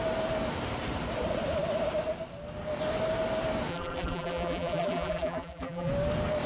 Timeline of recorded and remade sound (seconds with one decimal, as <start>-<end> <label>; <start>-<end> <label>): 0.0-3.7 recorded; 3.7-5.9 remade; 5.9-6.5 recorded